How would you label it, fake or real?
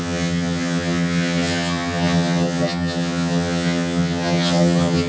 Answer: fake